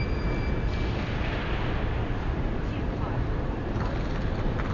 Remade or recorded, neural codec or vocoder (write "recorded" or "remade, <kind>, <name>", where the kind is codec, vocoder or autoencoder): recorded